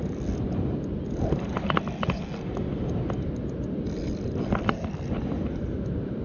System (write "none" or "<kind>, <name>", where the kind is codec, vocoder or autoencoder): none